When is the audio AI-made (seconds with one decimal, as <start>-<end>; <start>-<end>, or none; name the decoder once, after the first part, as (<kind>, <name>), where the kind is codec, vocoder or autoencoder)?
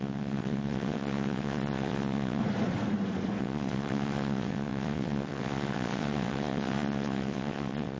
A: 0.0-2.4 (vocoder, WaveNeXt); 3.4-8.0